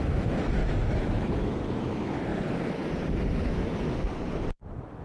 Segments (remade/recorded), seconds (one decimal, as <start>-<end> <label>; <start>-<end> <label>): 0.0-2.3 remade; 2.3-3.5 recorded; 3.5-5.0 remade